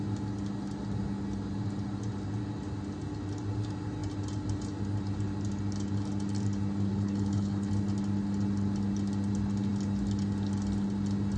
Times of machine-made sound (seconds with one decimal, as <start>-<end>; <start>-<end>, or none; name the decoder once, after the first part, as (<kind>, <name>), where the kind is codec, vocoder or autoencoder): 6.9-7.7 (codec, HILCodec)